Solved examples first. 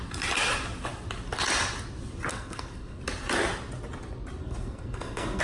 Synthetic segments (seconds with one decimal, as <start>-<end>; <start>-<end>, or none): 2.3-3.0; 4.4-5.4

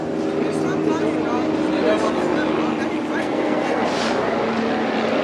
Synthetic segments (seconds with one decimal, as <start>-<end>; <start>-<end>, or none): 3.2-3.8

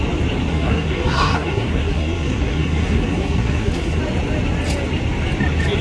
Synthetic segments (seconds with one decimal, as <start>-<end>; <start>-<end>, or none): 0.5-4.0

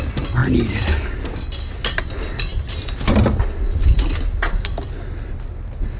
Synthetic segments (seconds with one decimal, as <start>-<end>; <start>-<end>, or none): none